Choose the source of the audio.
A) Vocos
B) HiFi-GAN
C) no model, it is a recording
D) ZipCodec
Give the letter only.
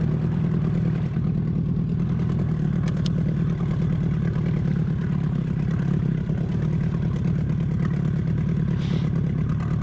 C